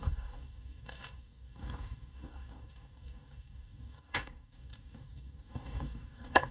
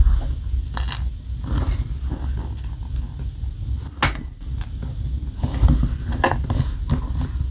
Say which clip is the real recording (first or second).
second